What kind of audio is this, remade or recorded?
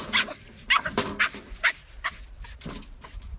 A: recorded